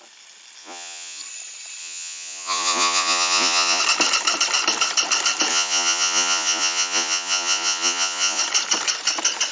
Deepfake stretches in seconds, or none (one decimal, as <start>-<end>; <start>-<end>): 0.6-1.2; 1.8-3.8; 5.5-8.4